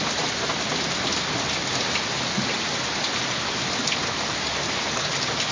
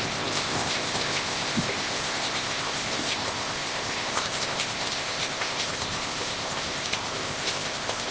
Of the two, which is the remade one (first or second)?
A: second